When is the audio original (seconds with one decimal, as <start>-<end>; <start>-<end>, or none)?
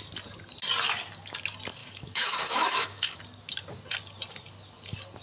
0.0-1.8; 3.2-5.2